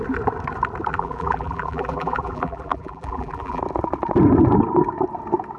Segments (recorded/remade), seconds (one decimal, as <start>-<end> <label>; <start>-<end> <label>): 0.0-0.9 recorded; 0.9-3.6 remade; 3.6-5.6 recorded